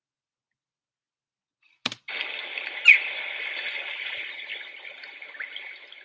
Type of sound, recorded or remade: recorded